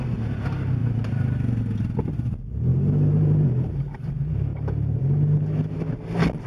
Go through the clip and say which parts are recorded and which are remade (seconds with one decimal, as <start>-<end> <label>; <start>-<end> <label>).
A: 0.0-2.7 recorded; 2.7-4.1 remade; 4.1-4.5 recorded; 4.5-5.0 remade; 5.0-6.5 recorded